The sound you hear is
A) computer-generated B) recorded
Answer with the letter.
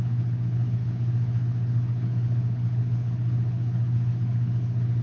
A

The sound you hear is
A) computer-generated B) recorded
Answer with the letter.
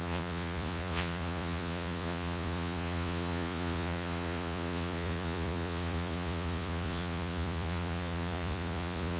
A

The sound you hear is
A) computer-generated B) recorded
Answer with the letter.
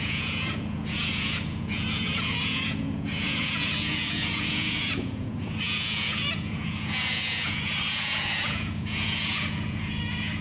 A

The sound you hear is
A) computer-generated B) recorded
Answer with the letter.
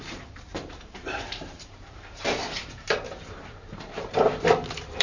A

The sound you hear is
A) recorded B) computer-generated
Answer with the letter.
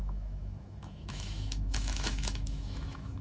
B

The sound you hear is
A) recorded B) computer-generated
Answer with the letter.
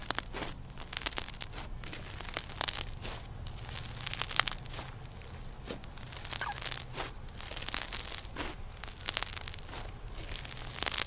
A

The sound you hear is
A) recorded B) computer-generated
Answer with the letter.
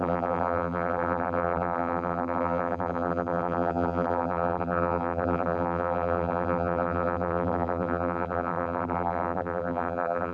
B